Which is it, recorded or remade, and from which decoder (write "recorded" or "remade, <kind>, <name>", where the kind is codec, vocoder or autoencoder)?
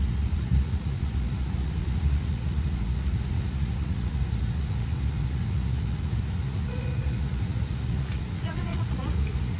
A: remade, vocoder, Vocos